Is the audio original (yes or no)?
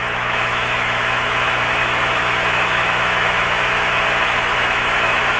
no